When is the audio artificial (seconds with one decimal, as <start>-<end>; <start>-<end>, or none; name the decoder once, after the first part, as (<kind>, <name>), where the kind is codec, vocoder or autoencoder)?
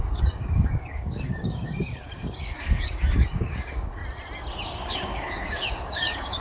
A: 0.0-4.0 (codec, DAC); 4.6-6.4